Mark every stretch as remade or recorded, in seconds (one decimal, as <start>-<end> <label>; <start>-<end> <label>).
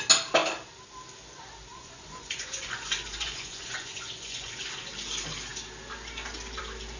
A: 0.0-1.7 recorded; 1.7-4.5 remade; 4.5-7.0 recorded